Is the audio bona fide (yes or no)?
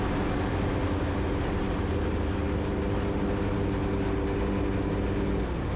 yes